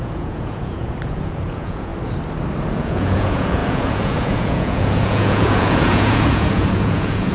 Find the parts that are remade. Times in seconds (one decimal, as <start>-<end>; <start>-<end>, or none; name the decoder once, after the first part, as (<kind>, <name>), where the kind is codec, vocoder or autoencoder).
0.0-1.9 (vocoder, Vocos); 2.7-7.3